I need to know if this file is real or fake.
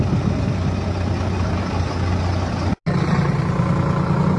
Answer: real